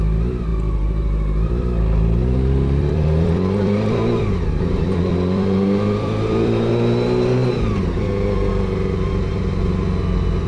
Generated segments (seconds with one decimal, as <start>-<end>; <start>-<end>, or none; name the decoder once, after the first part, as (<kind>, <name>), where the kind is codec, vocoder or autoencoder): 2.2-6.7 (vocoder, BigVGAN v2)